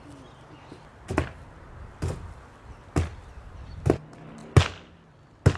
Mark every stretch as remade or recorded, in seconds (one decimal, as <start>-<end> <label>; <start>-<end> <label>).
0.0-5.6 recorded